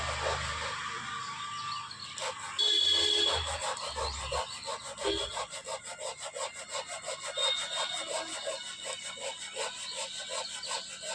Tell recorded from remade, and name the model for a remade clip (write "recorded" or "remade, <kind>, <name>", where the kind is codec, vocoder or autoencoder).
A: recorded